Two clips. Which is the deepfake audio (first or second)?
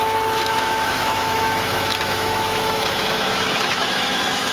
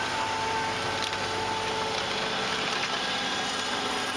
first